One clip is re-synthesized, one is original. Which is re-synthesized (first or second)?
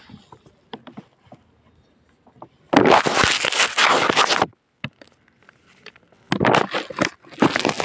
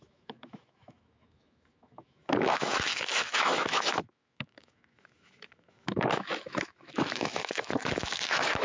second